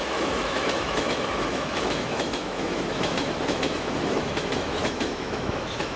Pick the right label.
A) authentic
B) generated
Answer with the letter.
B